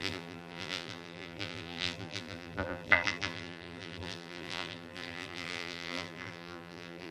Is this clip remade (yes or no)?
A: yes